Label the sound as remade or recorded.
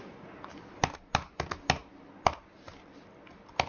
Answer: recorded